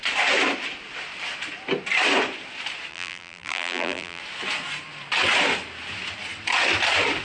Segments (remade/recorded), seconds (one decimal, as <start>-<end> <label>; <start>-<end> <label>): 0.0-2.9 recorded; 2.9-4.2 remade; 4.2-7.2 recorded